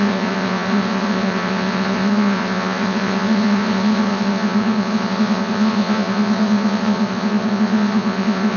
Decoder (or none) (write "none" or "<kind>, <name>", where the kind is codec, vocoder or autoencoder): vocoder, Vocos